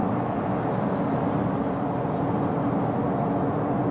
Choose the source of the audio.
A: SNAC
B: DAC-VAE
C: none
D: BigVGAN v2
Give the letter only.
C